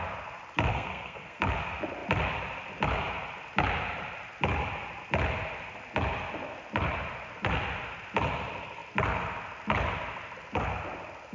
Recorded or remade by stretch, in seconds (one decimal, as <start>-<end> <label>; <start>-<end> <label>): 0.0-0.7 recorded; 0.7-1.4 remade; 1.4-11.3 recorded